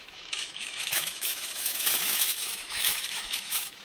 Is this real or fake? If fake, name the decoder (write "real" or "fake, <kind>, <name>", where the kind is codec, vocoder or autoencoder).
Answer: fake, autoencoder, DAC-VAE